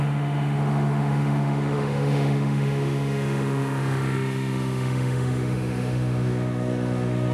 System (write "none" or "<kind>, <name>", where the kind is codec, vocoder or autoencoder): autoencoder, DAC-VAE